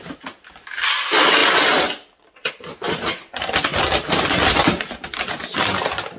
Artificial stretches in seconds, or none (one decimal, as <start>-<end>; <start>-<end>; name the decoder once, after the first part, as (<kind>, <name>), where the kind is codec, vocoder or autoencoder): none